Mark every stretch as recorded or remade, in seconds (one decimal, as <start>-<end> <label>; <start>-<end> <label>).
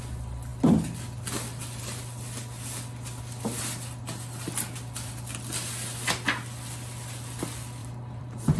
0.0-7.8 recorded; 7.8-8.6 remade